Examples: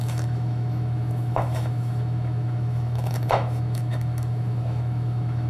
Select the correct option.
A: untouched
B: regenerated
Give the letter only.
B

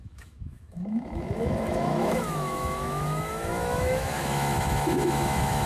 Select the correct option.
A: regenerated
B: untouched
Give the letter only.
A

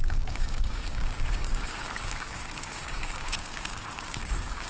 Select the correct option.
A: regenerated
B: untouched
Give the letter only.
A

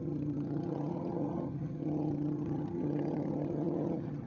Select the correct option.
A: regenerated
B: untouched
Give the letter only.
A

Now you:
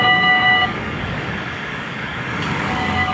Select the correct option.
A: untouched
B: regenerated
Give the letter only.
B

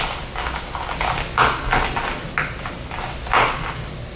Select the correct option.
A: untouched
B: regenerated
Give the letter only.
A